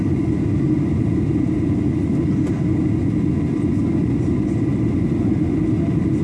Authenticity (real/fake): real